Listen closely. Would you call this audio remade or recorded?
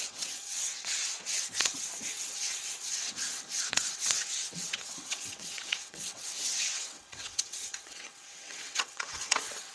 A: remade